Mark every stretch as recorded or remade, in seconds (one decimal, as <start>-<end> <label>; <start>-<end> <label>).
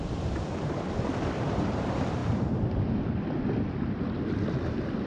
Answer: 0.0-2.2 remade; 2.2-4.6 recorded; 4.6-5.1 remade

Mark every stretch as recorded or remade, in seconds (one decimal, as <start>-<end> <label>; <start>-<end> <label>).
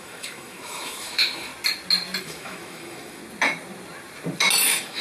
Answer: 0.0-1.5 remade; 1.5-2.2 recorded; 2.2-3.2 remade; 3.2-4.6 recorded; 4.6-5.0 remade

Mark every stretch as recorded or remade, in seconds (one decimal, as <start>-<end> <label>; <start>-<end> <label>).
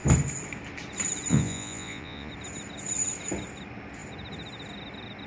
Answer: 0.0-1.3 recorded; 1.3-2.3 remade; 2.3-5.3 recorded